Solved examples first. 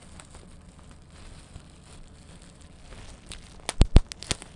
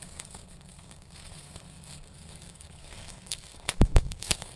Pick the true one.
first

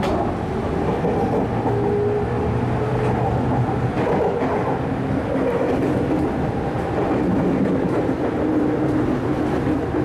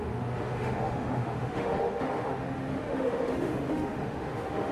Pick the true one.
first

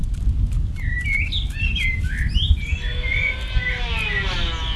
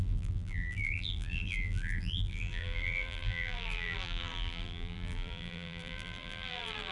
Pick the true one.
first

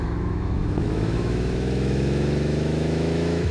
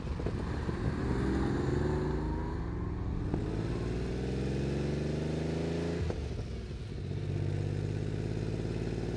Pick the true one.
second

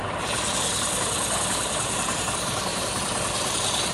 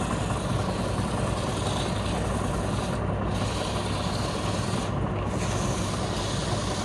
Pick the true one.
second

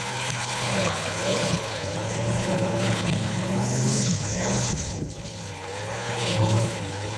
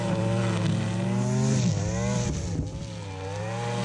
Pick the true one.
second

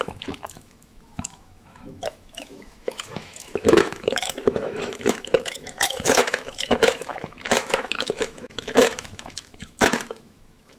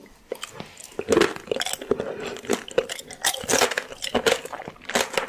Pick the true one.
second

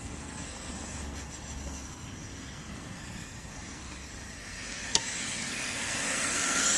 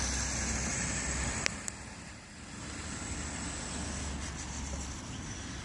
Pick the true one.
second